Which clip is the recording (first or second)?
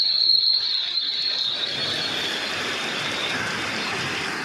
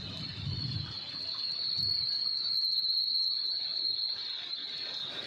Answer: second